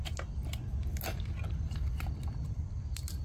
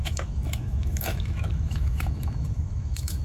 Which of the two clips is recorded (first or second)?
first